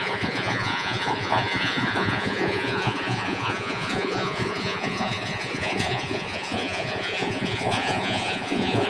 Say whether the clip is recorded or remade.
remade